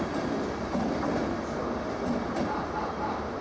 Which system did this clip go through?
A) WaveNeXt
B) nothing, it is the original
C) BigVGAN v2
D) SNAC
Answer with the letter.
B